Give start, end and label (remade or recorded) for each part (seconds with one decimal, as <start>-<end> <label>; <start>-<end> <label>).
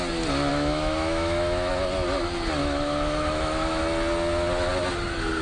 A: 0.0-0.5 recorded; 0.5-1.7 remade; 1.7-2.6 recorded; 2.6-3.8 remade; 3.8-5.4 recorded